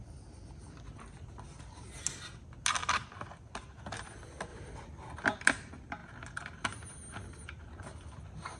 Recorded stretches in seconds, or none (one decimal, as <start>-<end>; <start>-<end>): 0.0-8.6